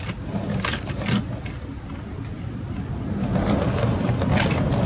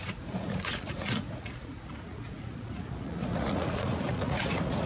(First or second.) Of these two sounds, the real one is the first